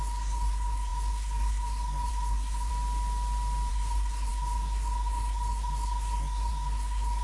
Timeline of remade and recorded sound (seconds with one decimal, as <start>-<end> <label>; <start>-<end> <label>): 0.0-2.7 remade; 2.7-3.7 recorded; 3.7-7.2 remade